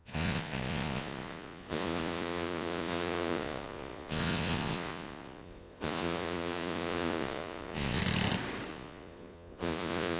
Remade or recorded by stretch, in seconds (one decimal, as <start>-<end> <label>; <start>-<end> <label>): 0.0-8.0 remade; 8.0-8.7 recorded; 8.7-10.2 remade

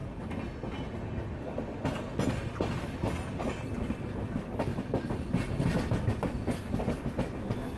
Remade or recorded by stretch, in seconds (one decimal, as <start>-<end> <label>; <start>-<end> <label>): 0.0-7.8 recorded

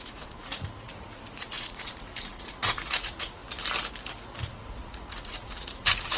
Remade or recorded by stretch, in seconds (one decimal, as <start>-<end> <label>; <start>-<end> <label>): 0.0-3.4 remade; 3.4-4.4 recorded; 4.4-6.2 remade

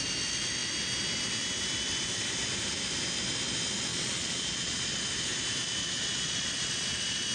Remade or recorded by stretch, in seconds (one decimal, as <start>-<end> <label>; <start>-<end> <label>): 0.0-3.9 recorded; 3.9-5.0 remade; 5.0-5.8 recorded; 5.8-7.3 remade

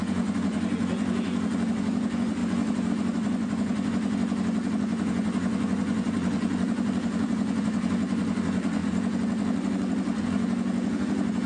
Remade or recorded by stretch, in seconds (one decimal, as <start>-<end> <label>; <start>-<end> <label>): 0.0-11.5 remade

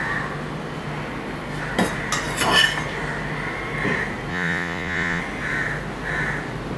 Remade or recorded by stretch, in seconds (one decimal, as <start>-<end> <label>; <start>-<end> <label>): 0.0-4.3 recorded; 4.3-5.2 remade; 5.2-6.8 recorded